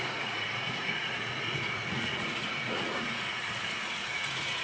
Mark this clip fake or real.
fake